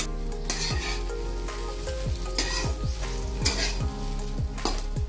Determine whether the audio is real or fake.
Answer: real